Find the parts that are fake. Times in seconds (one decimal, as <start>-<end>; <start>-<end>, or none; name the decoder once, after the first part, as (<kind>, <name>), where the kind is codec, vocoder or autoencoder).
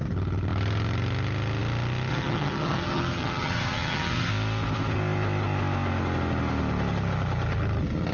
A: 2.1-4.3 (vocoder, HiFi-GAN)